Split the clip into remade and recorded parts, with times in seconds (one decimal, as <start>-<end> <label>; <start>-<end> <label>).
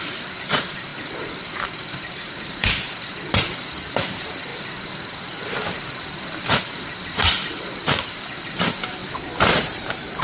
0.0-0.9 remade; 0.9-1.4 recorded; 1.4-4.5 remade; 4.5-6.8 recorded; 6.8-9.0 remade; 9.0-9.5 recorded; 9.5-10.2 remade